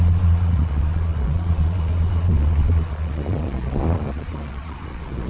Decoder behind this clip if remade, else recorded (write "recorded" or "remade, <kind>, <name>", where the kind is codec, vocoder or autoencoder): remade, vocoder, Vocos